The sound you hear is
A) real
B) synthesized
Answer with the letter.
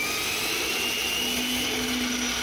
A